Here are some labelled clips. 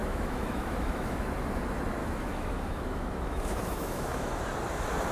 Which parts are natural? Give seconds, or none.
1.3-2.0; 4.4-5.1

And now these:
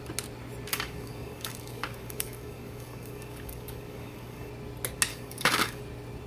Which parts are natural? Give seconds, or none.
0.0-0.7; 4.5-5.1; 5.8-6.3

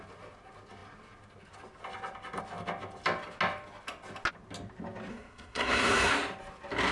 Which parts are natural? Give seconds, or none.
0.0-5.1; 6.1-6.9

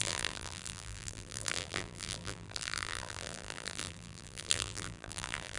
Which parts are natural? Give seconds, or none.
none

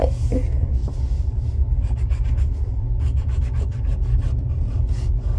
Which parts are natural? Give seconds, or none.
4.1-4.8

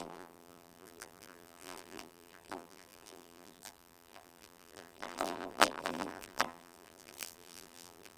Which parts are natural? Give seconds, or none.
none

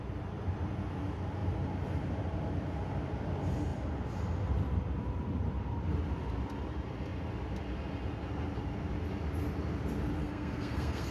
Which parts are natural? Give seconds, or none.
0.0-10.2

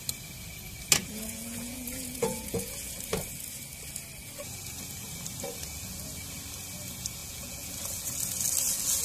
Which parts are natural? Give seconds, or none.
0.0-1.0; 3.0-7.2; 7.7-9.0